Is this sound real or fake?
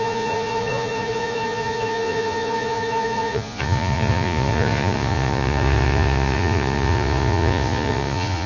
fake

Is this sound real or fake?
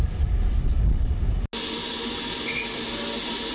real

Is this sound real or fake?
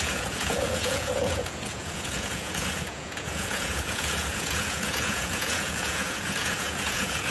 fake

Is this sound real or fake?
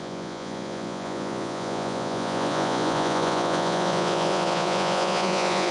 fake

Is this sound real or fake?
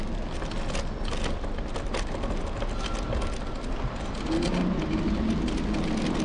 real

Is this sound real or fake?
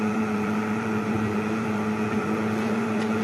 fake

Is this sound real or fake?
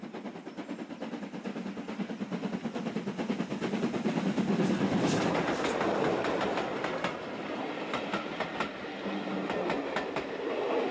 real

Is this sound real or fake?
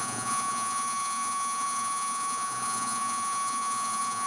fake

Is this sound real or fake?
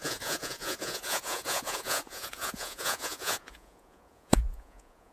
fake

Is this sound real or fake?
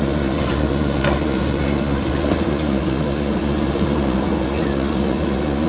fake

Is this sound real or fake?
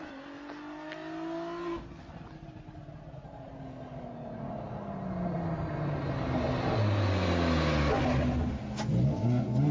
real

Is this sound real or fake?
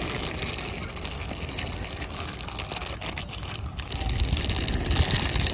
real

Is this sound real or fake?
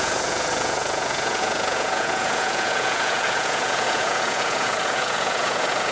fake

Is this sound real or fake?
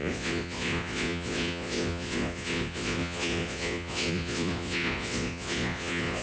fake